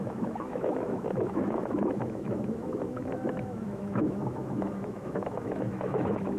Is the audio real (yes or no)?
no